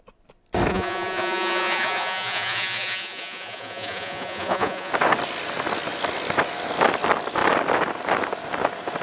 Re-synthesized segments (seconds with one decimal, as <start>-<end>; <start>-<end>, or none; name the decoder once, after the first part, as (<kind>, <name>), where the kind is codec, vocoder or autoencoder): 0.7-4.9 (vocoder, Vocos)